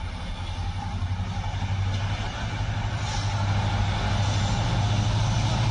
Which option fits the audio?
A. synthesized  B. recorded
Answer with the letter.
B